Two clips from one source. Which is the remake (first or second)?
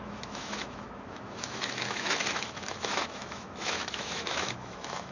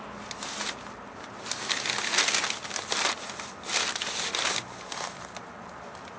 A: first